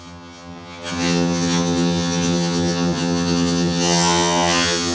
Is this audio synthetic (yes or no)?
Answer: yes